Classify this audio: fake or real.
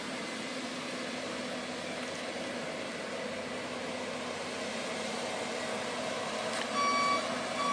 real